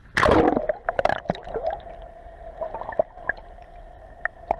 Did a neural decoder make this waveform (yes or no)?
no